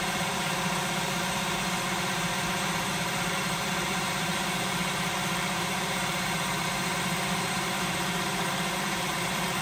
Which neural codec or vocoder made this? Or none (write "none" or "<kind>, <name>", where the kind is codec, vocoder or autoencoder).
vocoder, BigVGAN v2